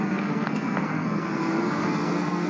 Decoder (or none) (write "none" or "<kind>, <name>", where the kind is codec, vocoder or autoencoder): codec, SNAC